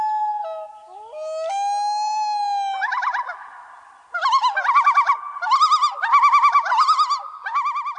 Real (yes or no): yes